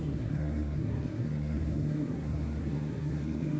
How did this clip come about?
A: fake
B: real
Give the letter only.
A